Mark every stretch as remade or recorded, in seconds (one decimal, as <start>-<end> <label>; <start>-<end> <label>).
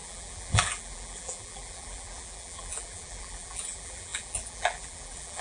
0.0-5.4 remade